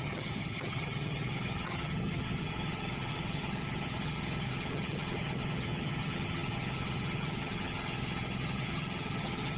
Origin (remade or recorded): remade